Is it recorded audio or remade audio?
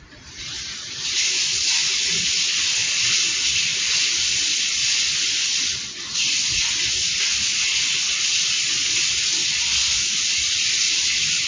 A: recorded